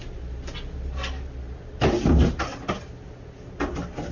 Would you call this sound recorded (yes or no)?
yes